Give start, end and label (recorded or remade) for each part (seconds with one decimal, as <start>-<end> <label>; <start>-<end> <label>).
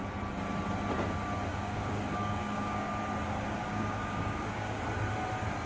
0.0-1.5 recorded; 1.5-2.9 remade; 2.9-3.6 recorded; 3.6-4.8 remade; 4.8-5.7 recorded